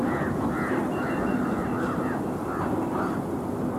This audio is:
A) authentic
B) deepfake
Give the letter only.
A